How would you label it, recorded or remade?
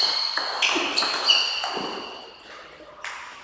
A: recorded